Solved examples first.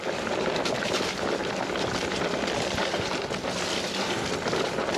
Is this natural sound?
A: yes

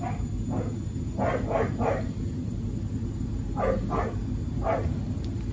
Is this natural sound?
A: yes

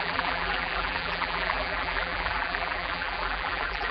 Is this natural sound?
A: no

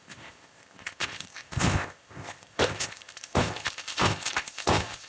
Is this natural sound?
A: no